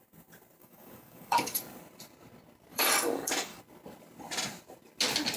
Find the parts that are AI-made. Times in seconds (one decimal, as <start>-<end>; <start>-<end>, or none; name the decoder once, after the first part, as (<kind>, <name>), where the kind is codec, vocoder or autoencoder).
0.6-1.6 (codec, DAC); 2.7-3.6